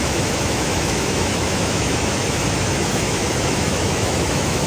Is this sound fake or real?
fake